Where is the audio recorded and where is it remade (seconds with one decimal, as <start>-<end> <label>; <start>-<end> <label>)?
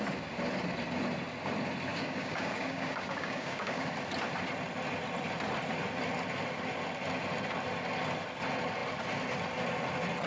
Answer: 0.0-1.9 recorded; 1.9-3.9 remade; 3.9-10.3 recorded